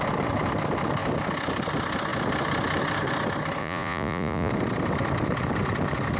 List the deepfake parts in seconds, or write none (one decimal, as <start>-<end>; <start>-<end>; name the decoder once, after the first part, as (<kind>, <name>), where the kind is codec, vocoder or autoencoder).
3.6-4.5 (vocoder, Vocos)